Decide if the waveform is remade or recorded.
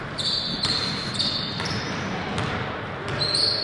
recorded